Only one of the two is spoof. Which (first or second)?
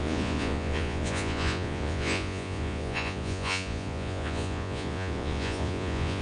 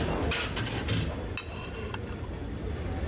first